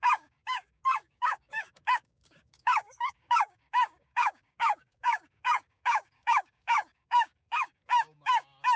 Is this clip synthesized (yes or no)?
yes